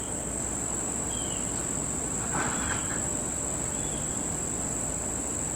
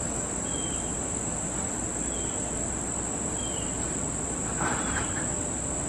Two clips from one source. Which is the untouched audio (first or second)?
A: first